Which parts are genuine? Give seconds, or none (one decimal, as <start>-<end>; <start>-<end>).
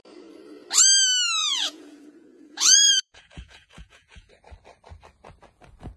0.0-1.4; 4.3-6.0